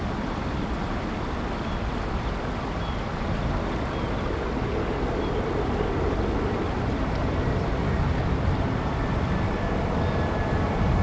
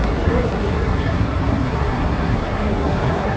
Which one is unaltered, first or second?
first